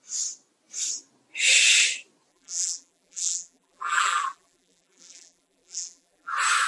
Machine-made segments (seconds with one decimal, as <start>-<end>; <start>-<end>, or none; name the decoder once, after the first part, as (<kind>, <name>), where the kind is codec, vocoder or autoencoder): 2.3-6.3 (vocoder, BigVGAN v2)

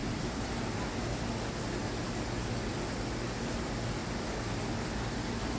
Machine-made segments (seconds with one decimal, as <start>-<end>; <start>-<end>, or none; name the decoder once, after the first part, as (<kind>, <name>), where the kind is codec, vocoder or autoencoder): 0.0-0.6 (vocoder, BigVGAN v2)